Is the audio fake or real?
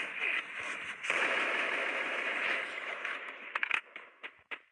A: fake